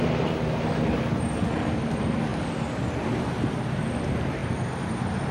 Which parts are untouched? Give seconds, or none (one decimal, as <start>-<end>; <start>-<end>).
0.0-5.3